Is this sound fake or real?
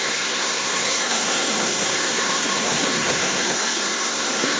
fake